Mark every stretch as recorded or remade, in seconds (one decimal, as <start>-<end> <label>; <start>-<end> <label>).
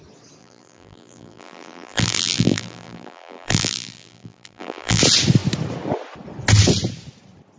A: 0.0-0.4 recorded; 0.4-5.0 remade; 5.0-7.6 recorded